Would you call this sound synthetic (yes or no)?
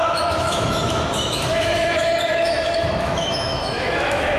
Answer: yes